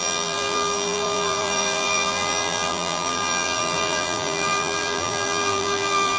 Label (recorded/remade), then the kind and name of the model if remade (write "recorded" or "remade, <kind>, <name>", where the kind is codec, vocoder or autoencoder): remade, vocoder, BigVGAN v2